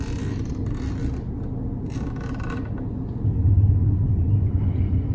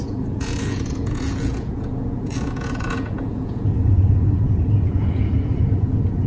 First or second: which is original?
first